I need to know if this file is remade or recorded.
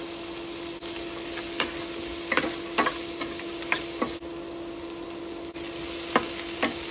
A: recorded